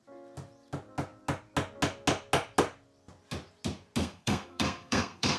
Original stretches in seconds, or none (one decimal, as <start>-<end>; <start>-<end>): 0.0-4.0